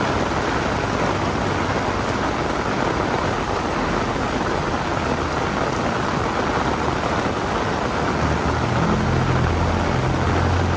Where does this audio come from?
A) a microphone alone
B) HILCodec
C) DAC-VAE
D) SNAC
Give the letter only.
A